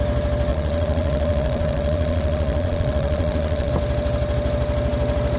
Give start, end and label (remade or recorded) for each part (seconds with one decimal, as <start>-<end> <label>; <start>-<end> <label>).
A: 0.0-0.5 recorded; 0.5-3.7 remade; 3.7-5.4 recorded